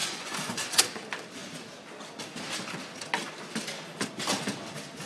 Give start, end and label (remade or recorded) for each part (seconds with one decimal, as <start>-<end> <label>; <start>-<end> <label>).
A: 0.0-0.8 remade; 0.8-5.0 recorded